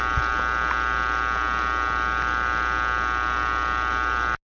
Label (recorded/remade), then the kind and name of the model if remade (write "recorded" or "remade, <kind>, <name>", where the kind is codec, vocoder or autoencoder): recorded